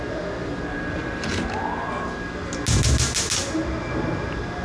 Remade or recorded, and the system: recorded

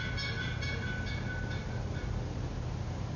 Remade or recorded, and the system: recorded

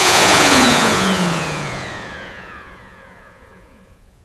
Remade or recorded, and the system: remade, vocoder, Vocos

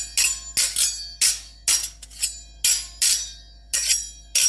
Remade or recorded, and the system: recorded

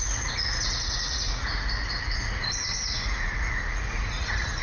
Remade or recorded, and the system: remade, vocoder, Vocos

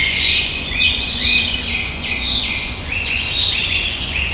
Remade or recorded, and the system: remade, vocoder, Vocos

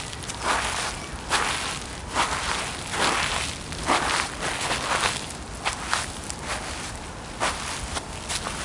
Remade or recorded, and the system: recorded